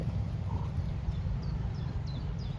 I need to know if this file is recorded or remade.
remade